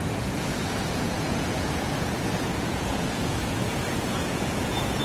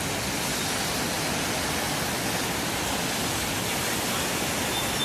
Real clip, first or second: second